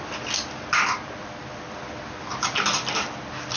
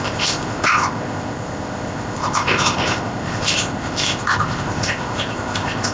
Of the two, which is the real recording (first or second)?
first